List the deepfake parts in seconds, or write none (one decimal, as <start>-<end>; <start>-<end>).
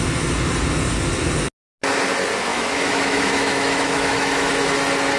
2.5-4.5